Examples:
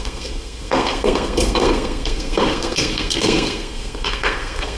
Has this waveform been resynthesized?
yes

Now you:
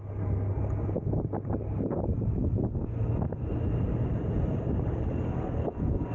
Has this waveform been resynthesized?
no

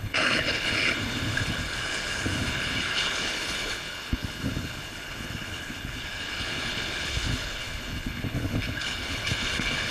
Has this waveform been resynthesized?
yes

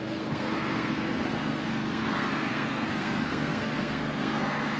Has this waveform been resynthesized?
yes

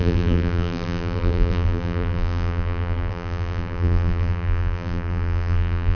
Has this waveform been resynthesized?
yes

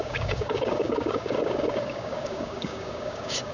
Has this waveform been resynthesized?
yes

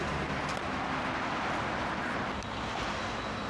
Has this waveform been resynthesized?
no